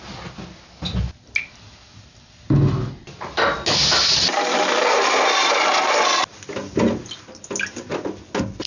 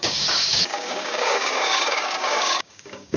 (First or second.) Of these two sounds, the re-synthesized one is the second